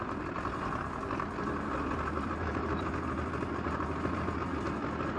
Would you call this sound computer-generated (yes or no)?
no